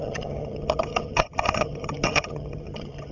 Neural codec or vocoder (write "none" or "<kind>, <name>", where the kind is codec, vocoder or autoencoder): vocoder, HiFi-GAN